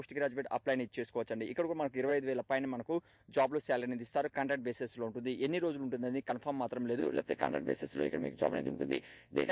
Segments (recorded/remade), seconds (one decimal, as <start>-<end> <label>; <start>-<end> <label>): 0.0-7.0 recorded; 7.0-9.5 remade